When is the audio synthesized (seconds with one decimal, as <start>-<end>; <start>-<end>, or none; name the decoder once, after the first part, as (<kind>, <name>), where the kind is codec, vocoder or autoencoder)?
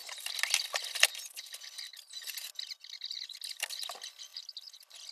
none